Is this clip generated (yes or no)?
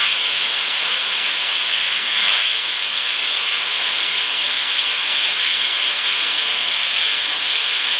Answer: yes